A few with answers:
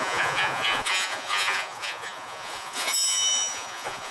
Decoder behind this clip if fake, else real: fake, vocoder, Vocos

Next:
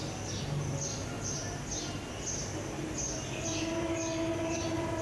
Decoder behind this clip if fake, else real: real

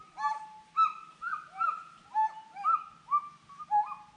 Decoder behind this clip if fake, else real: real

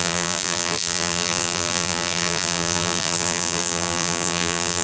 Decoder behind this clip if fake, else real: fake, vocoder, BigVGAN v2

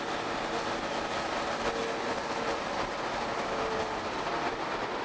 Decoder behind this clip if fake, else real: real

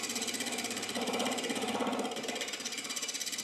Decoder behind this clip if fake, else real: fake, vocoder, BigVGAN v2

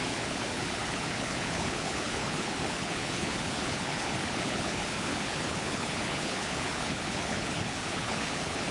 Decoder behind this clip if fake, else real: fake, codec, HILCodec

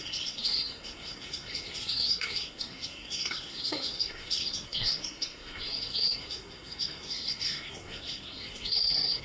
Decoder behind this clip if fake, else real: fake, codec, SNAC